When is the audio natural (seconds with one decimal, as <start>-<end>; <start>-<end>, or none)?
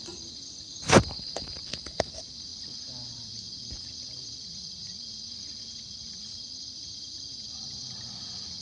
none